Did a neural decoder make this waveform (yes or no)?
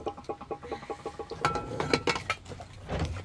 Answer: no